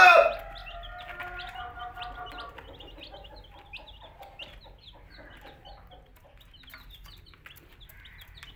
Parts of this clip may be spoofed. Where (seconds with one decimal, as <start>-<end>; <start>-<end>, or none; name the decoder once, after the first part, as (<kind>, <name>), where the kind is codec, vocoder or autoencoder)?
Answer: none